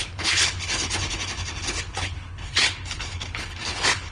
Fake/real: fake